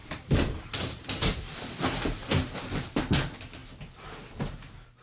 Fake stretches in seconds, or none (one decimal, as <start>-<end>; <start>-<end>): 0.0-3.0